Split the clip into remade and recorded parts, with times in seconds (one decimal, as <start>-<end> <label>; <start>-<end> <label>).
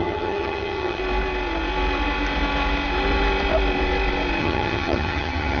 0.0-1.0 remade; 1.0-4.4 recorded; 4.4-5.6 remade